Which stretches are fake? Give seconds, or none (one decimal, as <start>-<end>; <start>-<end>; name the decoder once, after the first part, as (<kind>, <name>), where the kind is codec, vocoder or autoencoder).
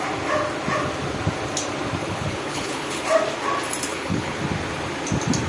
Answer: 2.0-3.0 (codec, HILCodec); 3.9-4.4